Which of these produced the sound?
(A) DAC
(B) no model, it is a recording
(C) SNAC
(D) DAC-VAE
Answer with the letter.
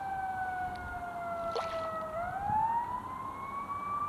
B